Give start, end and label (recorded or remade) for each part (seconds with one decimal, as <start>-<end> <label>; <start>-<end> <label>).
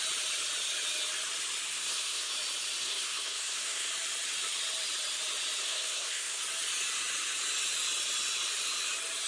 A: 0.0-1.7 recorded; 1.7-2.3 remade; 2.3-2.8 recorded; 2.8-3.9 remade; 3.9-5.6 recorded; 5.6-6.4 remade; 6.4-9.3 recorded